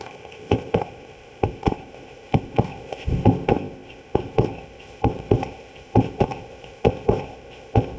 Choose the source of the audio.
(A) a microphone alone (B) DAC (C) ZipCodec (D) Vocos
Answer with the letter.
C